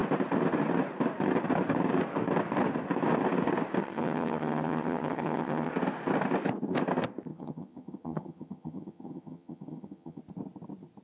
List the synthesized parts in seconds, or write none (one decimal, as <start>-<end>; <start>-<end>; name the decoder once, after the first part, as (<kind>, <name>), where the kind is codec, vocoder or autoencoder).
3.8-5.7 (vocoder, HiFi-GAN); 7.3-10.2